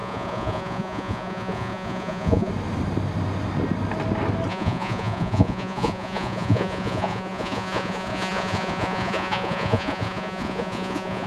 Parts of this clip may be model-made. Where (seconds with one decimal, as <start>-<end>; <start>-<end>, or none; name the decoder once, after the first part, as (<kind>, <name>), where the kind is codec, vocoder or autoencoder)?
0.0-2.5 (vocoder, Vocos); 4.5-11.3